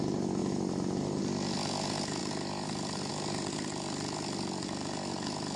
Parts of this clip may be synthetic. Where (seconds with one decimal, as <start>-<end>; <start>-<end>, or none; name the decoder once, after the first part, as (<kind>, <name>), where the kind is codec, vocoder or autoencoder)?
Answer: 2.2-3.1 (vocoder, BigVGAN v2)